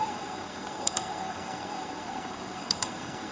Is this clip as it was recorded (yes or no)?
no